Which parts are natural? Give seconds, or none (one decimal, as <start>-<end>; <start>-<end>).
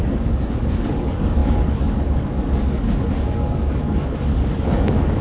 none